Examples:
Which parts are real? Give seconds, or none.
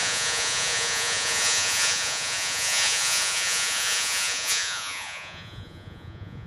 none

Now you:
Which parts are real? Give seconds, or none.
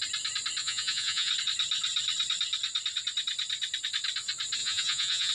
0.0-0.6; 1.3-4.6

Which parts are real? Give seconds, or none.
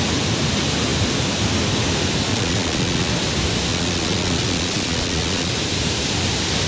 0.0-2.3; 3.1-3.7; 5.5-6.7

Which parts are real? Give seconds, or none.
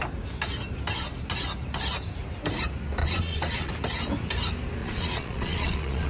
0.0-3.0; 3.7-4.8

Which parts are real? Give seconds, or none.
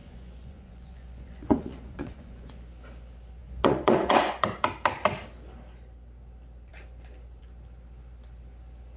2.6-3.4; 4.5-9.0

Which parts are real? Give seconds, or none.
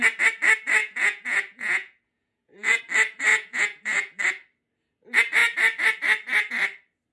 0.0-0.8; 2.8-3.3; 4.2-7.1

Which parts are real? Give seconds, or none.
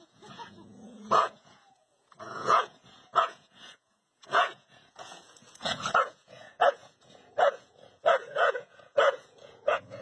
none